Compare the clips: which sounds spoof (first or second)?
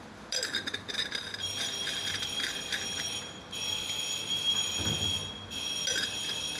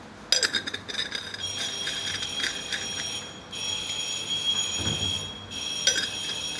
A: first